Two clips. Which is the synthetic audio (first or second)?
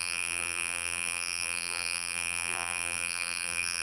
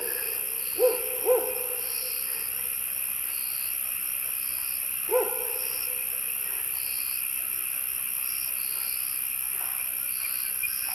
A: first